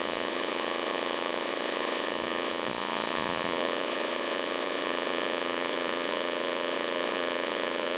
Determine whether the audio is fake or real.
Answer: fake